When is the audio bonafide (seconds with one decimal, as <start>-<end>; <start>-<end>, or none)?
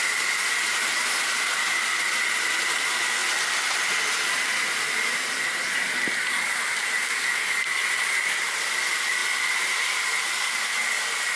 3.2-6.8; 9.2-9.8